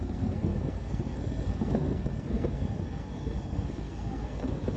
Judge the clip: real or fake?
fake